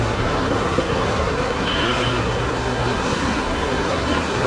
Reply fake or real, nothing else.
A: fake